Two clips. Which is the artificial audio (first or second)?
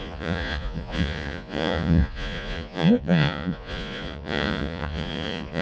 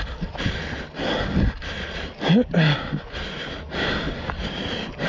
first